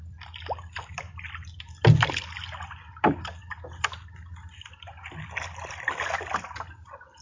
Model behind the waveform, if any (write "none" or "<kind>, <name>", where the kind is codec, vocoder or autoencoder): none